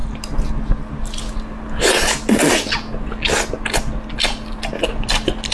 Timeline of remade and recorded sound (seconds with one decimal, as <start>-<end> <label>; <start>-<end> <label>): 0.0-5.5 recorded